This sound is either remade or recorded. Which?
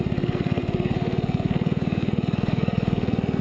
remade